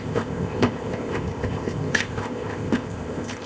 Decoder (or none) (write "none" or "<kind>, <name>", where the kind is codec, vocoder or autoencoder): codec, ZipCodec